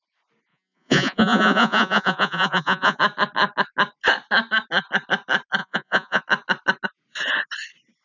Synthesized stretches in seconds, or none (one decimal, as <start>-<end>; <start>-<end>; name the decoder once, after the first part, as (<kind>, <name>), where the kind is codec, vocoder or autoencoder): 0.5-3.0 (vocoder, Vocos); 5.6-6.2